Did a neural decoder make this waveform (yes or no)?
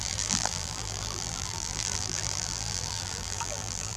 yes